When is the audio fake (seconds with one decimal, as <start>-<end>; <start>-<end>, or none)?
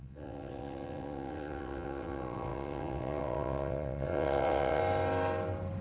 0.0-4.8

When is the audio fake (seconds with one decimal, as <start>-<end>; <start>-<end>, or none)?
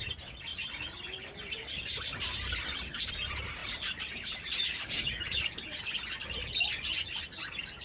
0.5-3.1; 3.6-5.8